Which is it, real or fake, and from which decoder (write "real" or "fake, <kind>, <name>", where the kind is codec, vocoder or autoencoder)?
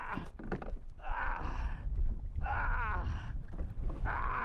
real